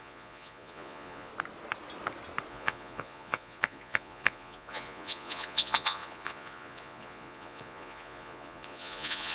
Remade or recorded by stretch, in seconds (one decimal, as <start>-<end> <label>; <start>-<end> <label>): 0.0-1.3 remade; 1.3-2.5 recorded; 2.5-9.3 remade